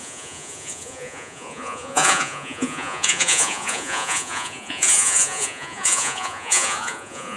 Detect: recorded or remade remade